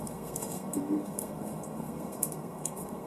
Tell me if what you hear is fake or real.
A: fake